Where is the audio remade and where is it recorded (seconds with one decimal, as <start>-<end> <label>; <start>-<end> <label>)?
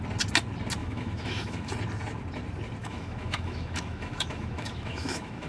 0.0-0.8 recorded; 0.8-1.7 remade; 1.7-2.8 recorded; 2.8-5.5 remade